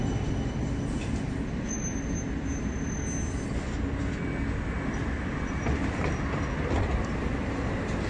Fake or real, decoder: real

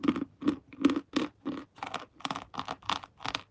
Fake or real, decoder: real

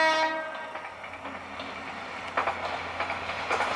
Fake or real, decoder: real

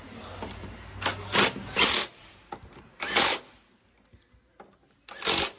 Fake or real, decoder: real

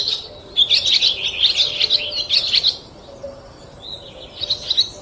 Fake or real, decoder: real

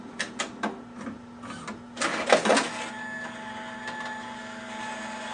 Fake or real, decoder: real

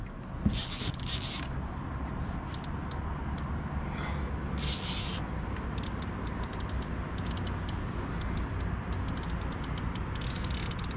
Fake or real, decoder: real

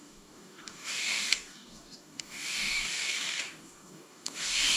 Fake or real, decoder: fake, codec, DAC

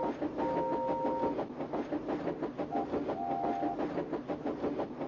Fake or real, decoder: real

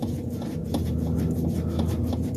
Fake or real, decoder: real